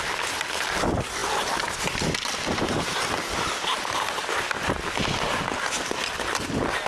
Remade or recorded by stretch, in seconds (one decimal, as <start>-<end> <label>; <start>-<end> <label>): 0.0-6.9 recorded